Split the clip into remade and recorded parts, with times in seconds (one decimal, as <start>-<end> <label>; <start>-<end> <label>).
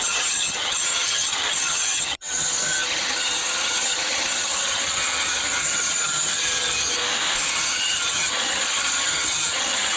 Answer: 0.0-7.0 remade; 7.0-7.5 recorded; 7.5-10.0 remade